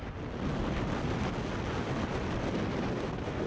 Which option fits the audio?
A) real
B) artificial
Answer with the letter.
A